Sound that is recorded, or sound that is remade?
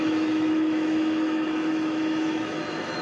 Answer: remade